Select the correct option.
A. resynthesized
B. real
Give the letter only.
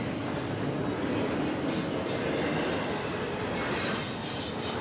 B